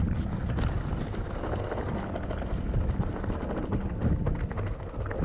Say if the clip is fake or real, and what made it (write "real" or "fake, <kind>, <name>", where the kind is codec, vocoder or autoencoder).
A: real